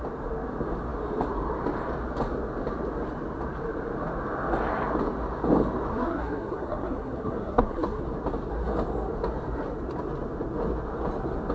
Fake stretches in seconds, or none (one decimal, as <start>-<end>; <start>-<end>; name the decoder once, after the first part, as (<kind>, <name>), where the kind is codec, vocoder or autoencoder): 5.9-8.0 (codec, SNAC)

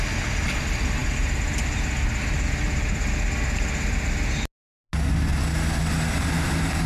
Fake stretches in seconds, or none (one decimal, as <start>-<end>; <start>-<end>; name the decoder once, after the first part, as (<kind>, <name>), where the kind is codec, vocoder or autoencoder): none